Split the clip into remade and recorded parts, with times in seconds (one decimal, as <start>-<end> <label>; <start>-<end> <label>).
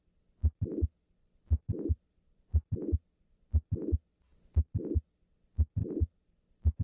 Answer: 0.0-1.2 recorded; 1.2-3.5 remade; 3.5-5.8 recorded; 5.8-6.8 remade